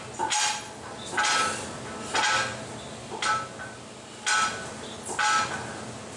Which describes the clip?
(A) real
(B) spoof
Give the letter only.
A